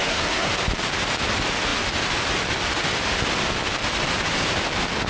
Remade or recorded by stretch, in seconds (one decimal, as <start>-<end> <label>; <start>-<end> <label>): 0.0-0.5 remade; 0.5-5.1 recorded